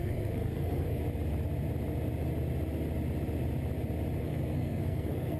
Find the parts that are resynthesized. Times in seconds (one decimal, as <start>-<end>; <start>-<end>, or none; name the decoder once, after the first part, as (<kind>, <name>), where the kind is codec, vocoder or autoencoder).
0.0-1.0 (codec, SNAC); 4.2-5.4